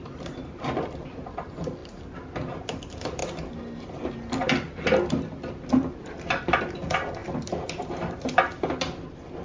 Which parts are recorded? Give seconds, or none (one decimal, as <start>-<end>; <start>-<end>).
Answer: 0.0-1.8; 2.6-3.2; 6.6-9.4